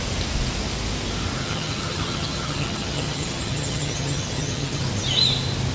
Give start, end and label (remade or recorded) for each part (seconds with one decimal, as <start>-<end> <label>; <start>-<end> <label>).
0.0-1.4 recorded; 1.4-4.8 remade; 4.8-5.7 recorded